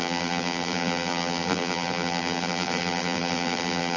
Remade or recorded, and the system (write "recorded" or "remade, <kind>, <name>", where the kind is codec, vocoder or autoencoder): remade, vocoder, BigVGAN v2